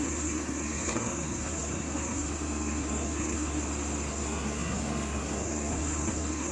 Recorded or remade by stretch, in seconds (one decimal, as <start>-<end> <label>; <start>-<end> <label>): 0.0-3.6 remade; 3.6-4.1 recorded; 4.1-6.5 remade